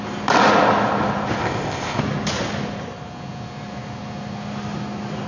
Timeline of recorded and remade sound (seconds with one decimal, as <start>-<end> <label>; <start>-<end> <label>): 0.0-1.4 recorded; 1.4-2.0 remade; 2.0-5.3 recorded